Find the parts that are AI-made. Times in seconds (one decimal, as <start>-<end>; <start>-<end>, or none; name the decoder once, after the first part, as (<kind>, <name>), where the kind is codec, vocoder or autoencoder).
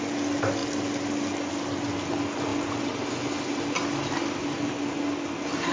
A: none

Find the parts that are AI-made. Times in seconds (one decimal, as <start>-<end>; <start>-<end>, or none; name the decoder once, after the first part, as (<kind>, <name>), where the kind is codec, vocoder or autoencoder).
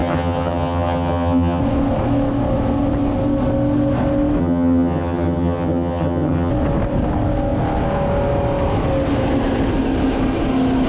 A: 0.0-1.6 (vocoder, HiFi-GAN); 4.4-6.5